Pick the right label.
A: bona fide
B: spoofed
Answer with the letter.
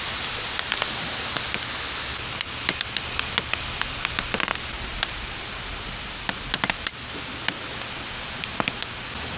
A